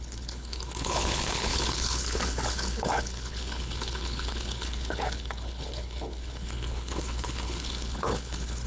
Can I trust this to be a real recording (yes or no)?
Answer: no